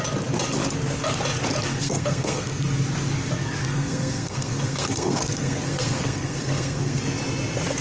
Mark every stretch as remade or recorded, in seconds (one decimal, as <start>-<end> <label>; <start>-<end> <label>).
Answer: 0.0-1.7 recorded; 1.7-2.6 remade; 2.6-3.6 recorded; 3.6-7.0 remade; 7.0-7.8 recorded